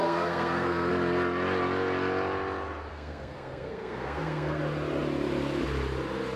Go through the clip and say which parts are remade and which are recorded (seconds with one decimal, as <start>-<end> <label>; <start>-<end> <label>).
0.0-0.9 remade; 0.9-2.9 recorded; 2.9-4.6 remade; 4.6-6.4 recorded